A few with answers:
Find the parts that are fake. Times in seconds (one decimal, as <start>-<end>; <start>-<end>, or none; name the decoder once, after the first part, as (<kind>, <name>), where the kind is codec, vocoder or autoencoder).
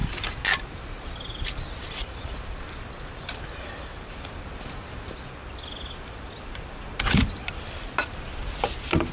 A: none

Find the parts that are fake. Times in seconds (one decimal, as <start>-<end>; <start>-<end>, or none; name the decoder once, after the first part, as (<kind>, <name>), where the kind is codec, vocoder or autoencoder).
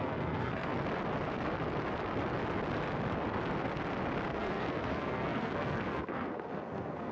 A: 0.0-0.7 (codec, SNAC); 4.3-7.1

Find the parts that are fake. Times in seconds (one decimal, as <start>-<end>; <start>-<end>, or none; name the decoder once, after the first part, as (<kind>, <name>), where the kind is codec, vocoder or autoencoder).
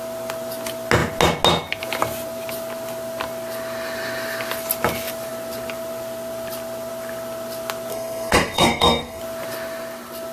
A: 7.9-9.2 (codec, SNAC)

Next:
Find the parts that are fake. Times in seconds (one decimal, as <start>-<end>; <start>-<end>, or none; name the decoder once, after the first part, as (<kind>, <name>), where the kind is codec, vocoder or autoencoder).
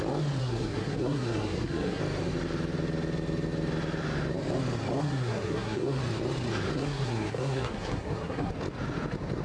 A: 0.4-2.0 (codec, SNAC); 5.0-6.0; 6.7-8.5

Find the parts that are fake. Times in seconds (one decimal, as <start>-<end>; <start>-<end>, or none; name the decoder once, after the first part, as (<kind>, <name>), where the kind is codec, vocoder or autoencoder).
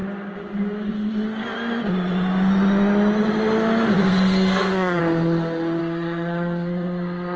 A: 4.0-5.0 (codec, SNAC); 5.8-7.4